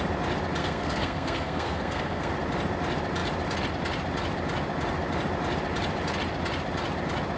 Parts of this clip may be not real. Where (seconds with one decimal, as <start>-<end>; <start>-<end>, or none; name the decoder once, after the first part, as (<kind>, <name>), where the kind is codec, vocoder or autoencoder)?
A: 0.6-2.3 (codec, SNAC)